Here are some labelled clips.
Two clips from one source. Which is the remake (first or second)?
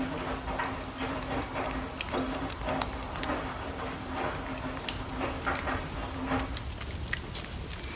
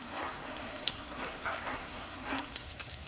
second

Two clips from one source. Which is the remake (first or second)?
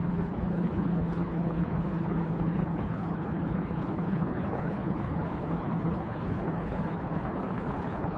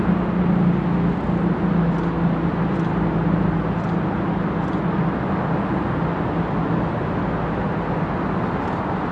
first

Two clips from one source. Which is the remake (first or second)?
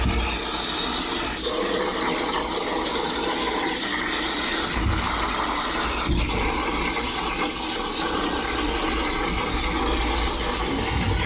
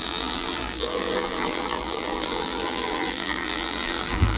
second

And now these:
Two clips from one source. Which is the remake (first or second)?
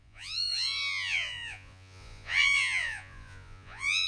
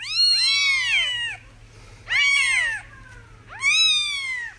first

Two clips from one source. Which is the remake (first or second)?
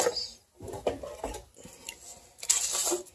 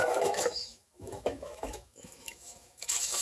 second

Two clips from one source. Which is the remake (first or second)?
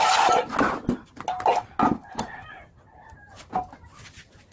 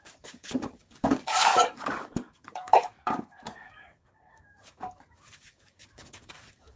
second